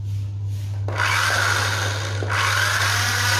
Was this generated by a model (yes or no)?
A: no